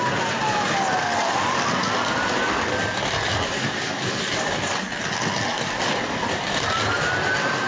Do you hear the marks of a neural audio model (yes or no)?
no